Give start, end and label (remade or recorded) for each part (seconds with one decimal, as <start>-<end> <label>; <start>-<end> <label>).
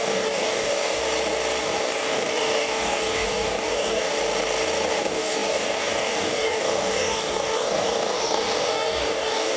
0.0-1.0 remade; 1.0-1.6 recorded; 1.6-4.2 remade; 4.2-4.9 recorded; 4.9-9.6 remade